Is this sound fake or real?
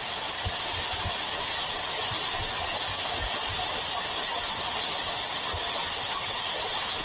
real